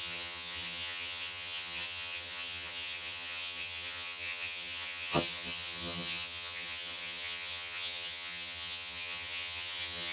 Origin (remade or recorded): remade